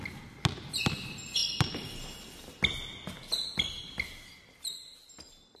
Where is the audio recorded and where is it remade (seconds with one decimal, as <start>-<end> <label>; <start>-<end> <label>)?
0.0-5.6 recorded